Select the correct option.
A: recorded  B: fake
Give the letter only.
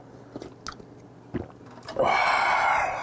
A